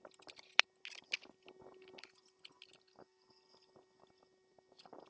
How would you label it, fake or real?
real